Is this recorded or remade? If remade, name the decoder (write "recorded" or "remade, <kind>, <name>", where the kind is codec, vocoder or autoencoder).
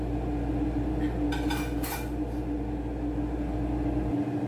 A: recorded